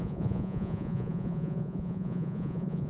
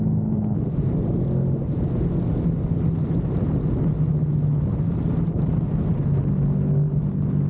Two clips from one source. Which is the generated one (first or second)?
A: first